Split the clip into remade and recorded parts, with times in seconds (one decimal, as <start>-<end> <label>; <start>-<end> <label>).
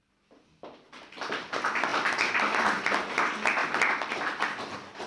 0.0-5.1 recorded